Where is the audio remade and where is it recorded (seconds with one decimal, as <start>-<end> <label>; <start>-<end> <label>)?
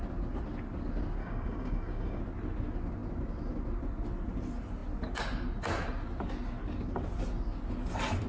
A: 0.0-1.2 recorded; 1.2-2.2 remade; 2.2-8.3 recorded